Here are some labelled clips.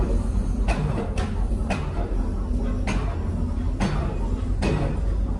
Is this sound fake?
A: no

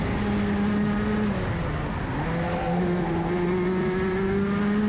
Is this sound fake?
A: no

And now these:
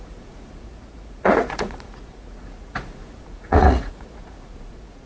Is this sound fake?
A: yes